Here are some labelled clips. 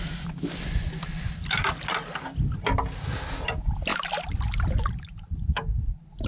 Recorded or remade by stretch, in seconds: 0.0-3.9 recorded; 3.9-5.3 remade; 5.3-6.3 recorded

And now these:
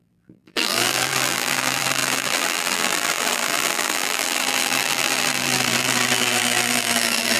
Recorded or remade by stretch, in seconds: 0.0-7.4 remade

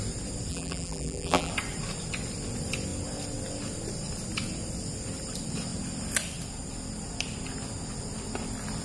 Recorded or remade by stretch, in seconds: 0.0-0.5 recorded; 0.5-1.5 remade; 1.5-8.8 recorded